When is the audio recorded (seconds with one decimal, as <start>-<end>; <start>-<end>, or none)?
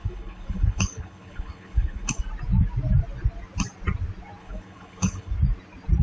2.2-4.4; 5.3-6.0